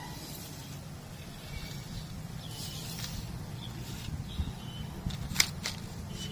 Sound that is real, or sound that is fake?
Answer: fake